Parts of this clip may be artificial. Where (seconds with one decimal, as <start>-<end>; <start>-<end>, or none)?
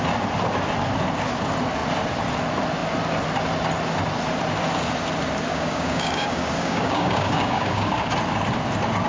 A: 5.5-8.1